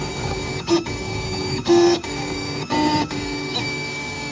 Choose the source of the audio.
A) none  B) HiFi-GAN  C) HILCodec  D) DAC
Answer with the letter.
D